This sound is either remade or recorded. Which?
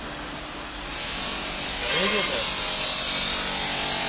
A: recorded